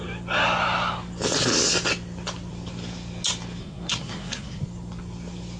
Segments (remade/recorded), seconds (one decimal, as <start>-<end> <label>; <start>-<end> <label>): 0.0-3.6 recorded; 3.6-4.6 remade; 4.6-5.6 recorded

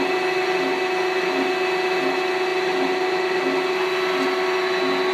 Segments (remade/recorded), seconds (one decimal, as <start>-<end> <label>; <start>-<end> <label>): 0.0-5.1 recorded

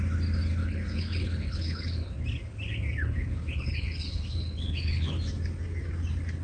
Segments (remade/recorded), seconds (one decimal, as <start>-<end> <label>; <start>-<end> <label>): 0.0-0.6 recorded; 0.6-2.1 remade; 2.1-3.0 recorded; 3.0-5.1 remade; 5.1-6.4 recorded

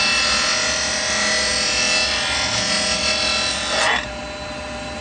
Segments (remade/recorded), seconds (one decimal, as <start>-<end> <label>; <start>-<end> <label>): 0.0-5.0 recorded

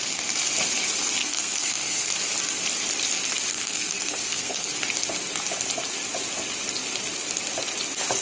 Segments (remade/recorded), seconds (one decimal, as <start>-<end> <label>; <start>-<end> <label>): 0.0-1.2 recorded; 1.2-2.1 remade; 2.1-3.5 recorded; 3.5-4.7 remade; 4.7-8.2 recorded

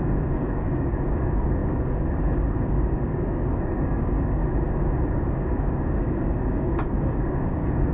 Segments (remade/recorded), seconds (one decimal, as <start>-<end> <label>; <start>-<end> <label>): 0.0-4.4 remade; 4.4-5.1 recorded; 5.1-7.9 remade